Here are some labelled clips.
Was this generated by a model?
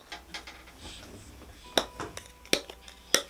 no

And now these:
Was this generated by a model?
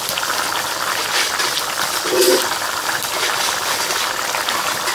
no